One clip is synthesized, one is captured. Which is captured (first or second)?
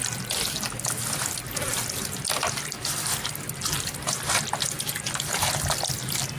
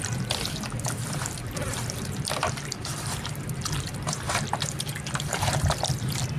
first